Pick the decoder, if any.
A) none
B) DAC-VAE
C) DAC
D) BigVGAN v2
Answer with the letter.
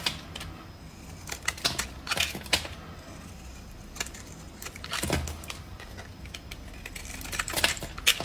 A